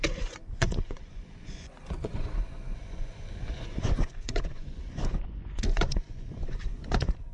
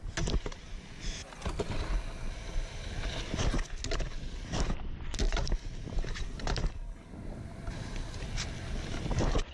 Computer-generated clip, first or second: first